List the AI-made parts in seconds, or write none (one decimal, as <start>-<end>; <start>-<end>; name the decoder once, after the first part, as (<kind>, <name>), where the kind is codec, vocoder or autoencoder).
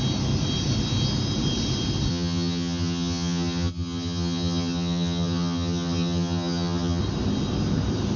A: 2.1-7.0 (vocoder, HiFi-GAN)